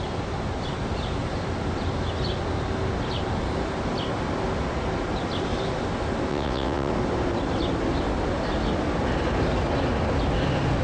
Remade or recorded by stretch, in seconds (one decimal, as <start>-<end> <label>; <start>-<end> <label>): 0.0-6.3 recorded; 6.3-6.9 remade; 6.9-10.8 recorded